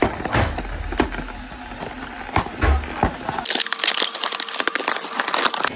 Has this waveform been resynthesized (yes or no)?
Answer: no